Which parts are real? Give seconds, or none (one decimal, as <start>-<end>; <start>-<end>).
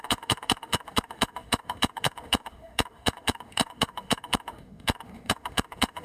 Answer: none